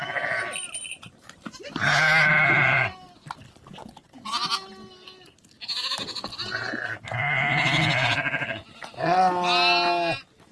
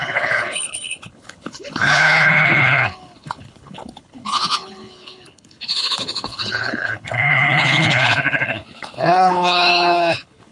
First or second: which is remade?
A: second